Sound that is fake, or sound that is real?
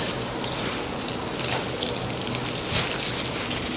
real